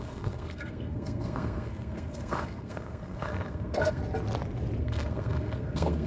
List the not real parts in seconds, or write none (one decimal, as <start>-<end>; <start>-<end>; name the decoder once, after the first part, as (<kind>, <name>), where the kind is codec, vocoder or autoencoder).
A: 0.0-4.0 (codec, SNAC); 4.8-6.1